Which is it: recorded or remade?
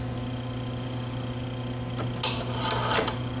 recorded